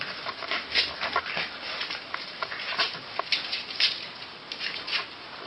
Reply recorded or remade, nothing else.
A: recorded